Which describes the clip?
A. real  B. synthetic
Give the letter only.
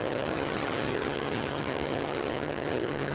B